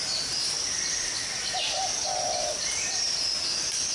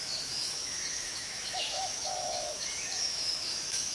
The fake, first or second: second